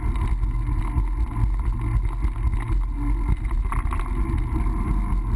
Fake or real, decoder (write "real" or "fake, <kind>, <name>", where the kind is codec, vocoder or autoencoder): real